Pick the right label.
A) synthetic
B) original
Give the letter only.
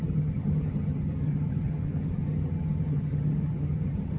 A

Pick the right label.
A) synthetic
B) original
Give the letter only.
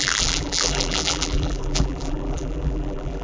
A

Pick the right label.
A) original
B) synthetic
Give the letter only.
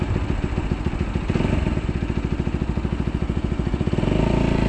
A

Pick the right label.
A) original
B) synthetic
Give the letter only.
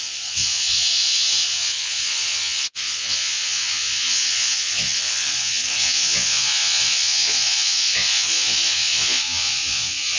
B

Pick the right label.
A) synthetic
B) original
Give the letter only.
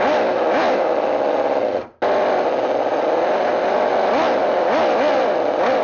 B